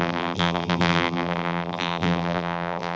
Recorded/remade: remade